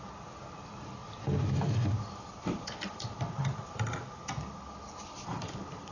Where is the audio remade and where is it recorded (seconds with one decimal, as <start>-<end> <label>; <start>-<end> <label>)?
0.0-5.9 recorded